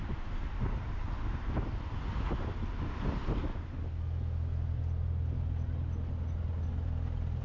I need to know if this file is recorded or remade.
recorded